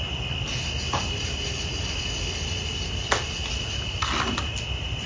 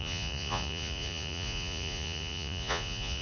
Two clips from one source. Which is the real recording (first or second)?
first